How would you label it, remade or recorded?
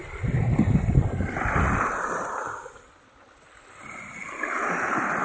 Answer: recorded